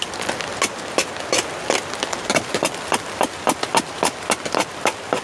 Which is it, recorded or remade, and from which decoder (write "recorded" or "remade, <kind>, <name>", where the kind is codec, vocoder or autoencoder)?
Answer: recorded